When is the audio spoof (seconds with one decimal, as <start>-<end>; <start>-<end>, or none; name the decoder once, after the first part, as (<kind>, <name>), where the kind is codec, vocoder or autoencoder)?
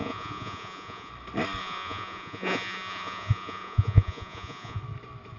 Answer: 0.0-1.1 (vocoder, Vocos); 1.6-4.8